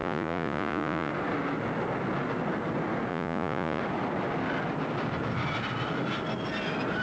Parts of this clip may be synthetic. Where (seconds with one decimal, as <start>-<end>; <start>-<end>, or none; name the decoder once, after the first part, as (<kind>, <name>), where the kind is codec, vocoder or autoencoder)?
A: 0.0-1.1 (vocoder, Vocos); 3.1-3.8